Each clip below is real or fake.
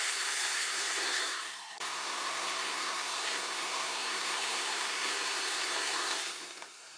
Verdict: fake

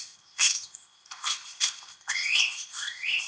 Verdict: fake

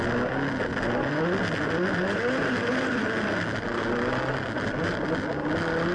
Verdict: real